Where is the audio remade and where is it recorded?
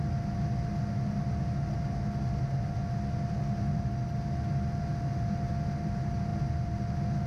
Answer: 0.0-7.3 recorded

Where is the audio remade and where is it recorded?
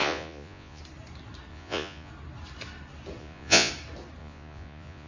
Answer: 0.0-0.8 remade; 0.8-1.5 recorded; 1.5-2.1 remade; 2.1-3.2 recorded; 3.2-3.7 remade; 3.7-4.2 recorded; 4.2-5.1 remade